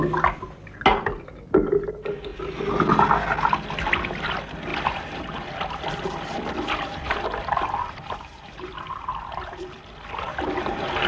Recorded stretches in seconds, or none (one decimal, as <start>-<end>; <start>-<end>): 0.0-4.7; 9.8-11.1